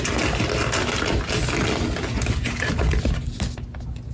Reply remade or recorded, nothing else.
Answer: recorded